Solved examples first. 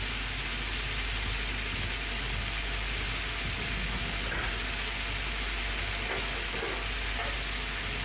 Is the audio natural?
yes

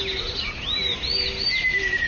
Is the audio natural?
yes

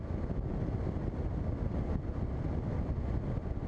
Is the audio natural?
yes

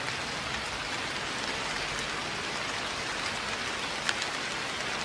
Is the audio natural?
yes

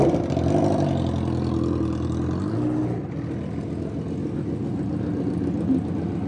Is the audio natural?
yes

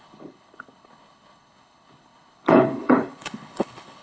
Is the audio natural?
no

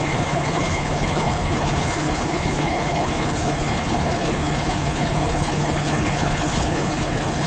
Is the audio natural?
no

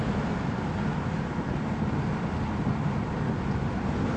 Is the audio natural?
yes